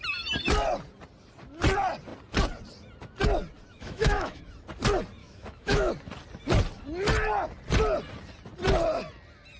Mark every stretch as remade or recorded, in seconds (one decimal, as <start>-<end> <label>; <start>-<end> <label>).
0.0-3.7 recorded; 3.7-4.4 remade; 4.4-5.2 recorded; 5.2-5.9 remade; 5.9-9.6 recorded